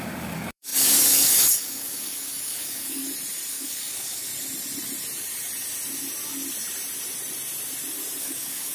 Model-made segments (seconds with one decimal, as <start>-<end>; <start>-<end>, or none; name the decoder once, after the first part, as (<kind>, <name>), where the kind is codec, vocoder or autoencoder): 0.0-3.0 (codec, DAC); 3.5-4.3; 8.2-8.7